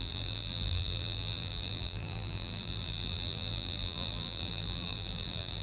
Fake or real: fake